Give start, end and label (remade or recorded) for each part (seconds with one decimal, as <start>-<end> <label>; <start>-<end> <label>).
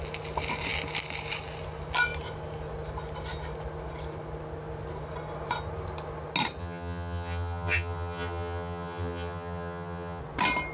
0.0-6.6 recorded; 6.6-10.2 remade; 10.2-10.7 recorded